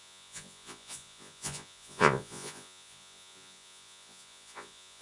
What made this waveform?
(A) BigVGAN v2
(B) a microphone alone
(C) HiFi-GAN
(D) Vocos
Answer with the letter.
D